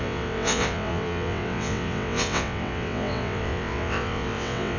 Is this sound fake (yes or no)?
yes